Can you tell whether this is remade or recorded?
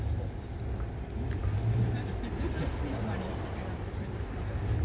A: recorded